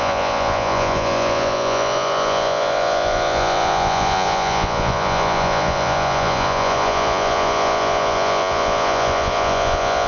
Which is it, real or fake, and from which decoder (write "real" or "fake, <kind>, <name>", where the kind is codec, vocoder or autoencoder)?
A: fake, vocoder, Vocos